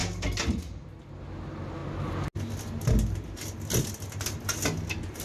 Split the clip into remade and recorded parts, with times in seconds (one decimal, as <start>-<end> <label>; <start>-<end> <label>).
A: 0.0-5.2 recorded